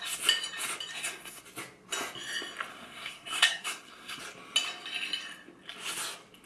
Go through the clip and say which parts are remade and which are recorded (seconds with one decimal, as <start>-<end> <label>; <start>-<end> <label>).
0.0-0.9 recorded; 0.9-1.4 remade; 1.4-2.7 recorded; 2.7-4.2 remade; 4.2-6.5 recorded